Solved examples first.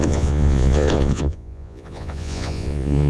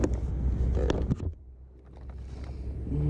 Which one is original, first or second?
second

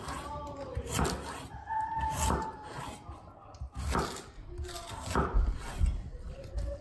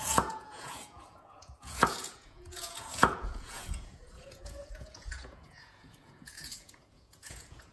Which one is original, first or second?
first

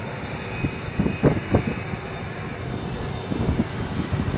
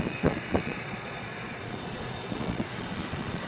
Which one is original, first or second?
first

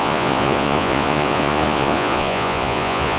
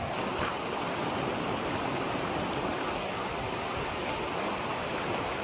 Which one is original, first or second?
second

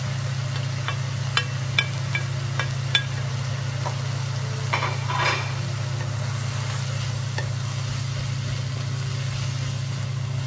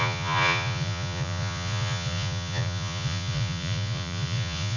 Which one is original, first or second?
first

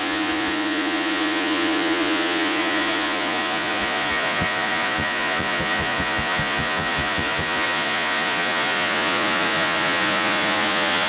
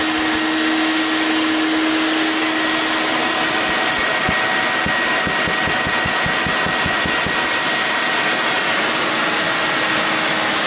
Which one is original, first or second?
second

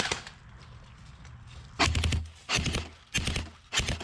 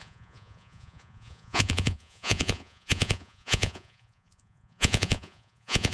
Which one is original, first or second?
first